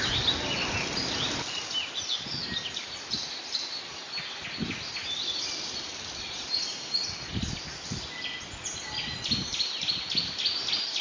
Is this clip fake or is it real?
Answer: real